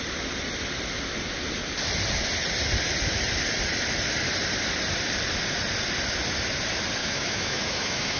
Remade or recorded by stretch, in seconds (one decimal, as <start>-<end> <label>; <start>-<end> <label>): 0.0-7.0 recorded; 7.0-8.2 remade